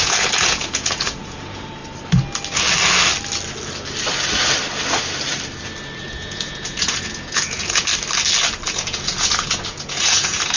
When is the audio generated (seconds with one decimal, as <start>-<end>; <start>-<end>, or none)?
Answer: 0.0-1.8; 6.0-7.9; 8.7-10.6